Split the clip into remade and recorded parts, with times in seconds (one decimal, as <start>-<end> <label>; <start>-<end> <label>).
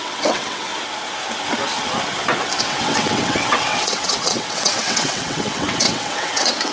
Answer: 0.0-0.7 remade; 0.7-2.6 recorded; 2.6-6.7 remade